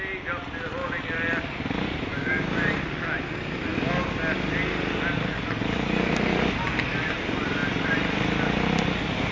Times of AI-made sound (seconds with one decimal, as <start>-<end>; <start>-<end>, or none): 2.1-2.7